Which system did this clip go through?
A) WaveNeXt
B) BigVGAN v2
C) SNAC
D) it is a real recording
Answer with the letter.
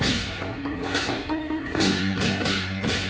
C